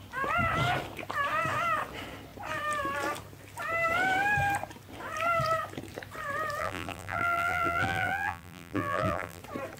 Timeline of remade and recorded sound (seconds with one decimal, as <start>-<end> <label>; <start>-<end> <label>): 0.0-6.6 recorded; 6.6-9.4 remade; 9.4-9.8 recorded